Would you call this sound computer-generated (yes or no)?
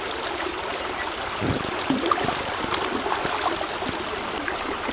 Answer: no